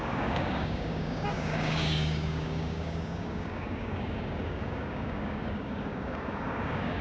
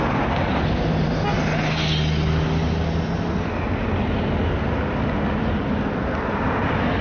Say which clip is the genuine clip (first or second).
second